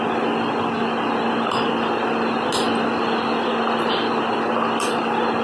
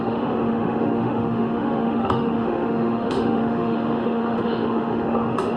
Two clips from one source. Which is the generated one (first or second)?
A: second